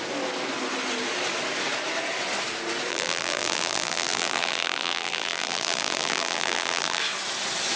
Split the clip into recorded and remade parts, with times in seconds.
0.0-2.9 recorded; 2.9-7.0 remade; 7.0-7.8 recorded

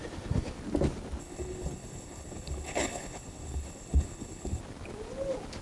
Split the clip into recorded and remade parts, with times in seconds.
0.0-1.2 recorded; 1.2-4.6 remade; 4.6-5.6 recorded

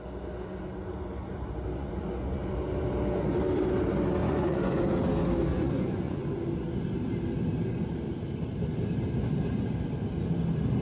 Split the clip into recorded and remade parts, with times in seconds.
0.0-1.8 recorded; 1.8-2.4 remade; 2.4-4.2 recorded; 4.2-4.8 remade; 4.8-5.5 recorded; 5.5-6.2 remade; 6.2-10.8 recorded

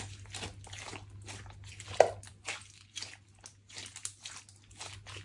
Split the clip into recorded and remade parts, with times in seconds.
0.0-5.2 recorded